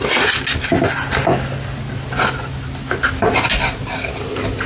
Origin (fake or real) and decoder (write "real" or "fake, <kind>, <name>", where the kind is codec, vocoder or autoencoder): real